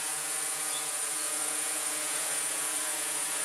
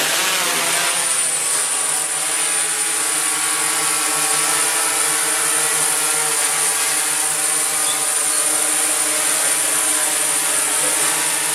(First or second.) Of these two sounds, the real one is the second